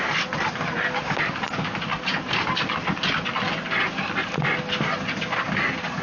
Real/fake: real